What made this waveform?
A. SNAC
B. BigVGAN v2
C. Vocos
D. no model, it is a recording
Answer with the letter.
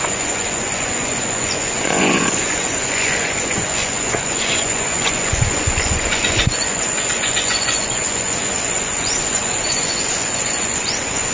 C